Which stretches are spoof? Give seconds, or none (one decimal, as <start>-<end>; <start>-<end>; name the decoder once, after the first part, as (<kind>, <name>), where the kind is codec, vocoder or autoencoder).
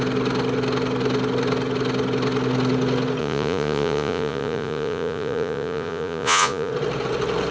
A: 3.2-6.7 (vocoder, Vocos)